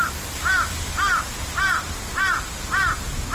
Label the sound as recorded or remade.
recorded